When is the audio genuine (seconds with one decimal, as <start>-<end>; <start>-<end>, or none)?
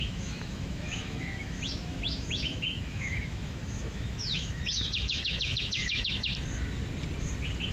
6.3-7.7